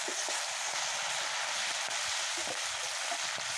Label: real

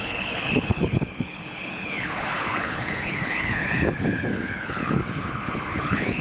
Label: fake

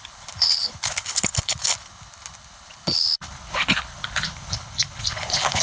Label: fake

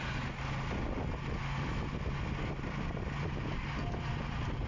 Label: real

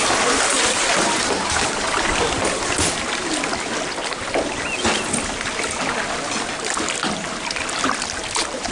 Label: real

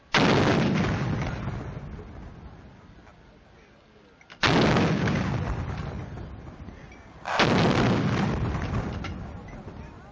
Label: real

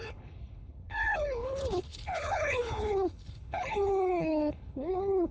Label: fake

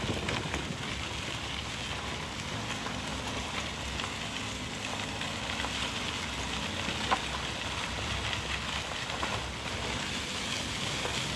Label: real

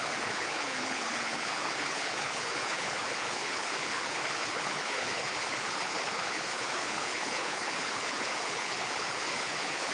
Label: fake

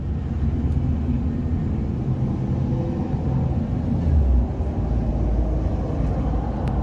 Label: real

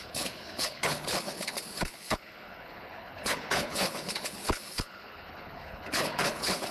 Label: fake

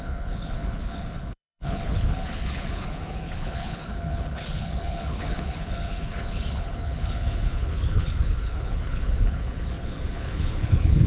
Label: fake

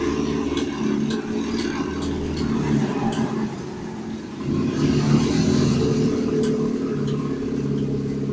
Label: real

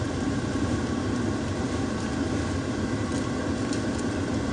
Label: real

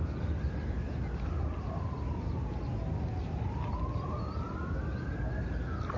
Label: real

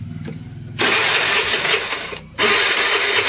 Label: real